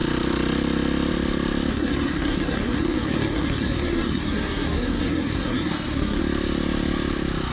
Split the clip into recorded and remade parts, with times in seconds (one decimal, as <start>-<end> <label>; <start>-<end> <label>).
0.0-1.7 recorded; 1.7-6.2 remade; 6.2-7.5 recorded

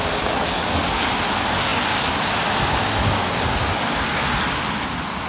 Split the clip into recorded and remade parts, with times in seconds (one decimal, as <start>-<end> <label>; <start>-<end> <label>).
0.0-5.3 recorded

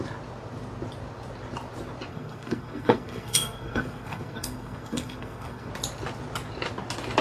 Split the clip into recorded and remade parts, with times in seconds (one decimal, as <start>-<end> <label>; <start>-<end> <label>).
0.0-2.1 recorded; 2.1-5.7 remade; 5.7-7.2 recorded

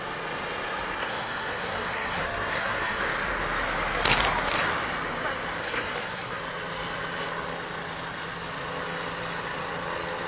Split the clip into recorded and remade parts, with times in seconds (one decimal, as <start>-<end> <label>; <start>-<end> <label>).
0.0-1.0 recorded; 1.0-3.0 remade; 3.0-5.6 recorded; 5.6-6.4 remade; 6.4-10.3 recorded

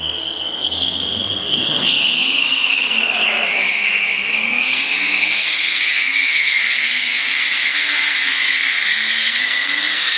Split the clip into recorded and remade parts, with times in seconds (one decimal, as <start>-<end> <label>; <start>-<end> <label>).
0.0-10.2 remade

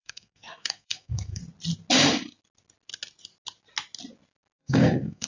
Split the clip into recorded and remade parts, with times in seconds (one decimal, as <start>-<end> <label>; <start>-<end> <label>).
0.0-1.4 remade; 1.4-4.6 recorded; 4.6-5.3 remade